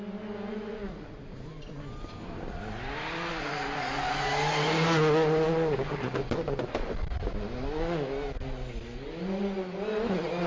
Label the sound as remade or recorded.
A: recorded